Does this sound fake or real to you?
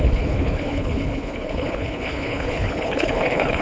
fake